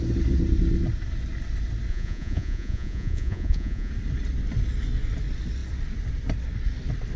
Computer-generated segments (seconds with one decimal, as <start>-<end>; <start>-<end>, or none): 1.9-3.9